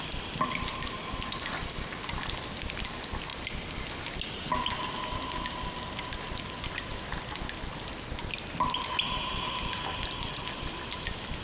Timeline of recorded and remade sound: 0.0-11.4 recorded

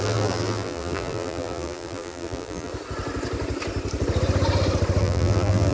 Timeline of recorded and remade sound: 0.0-2.7 remade; 2.7-5.0 recorded; 5.0-5.7 remade

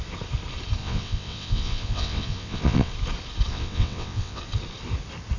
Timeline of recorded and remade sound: 0.0-0.8 recorded; 0.8-2.9 remade; 2.9-3.5 recorded; 3.5-4.4 remade; 4.4-5.4 recorded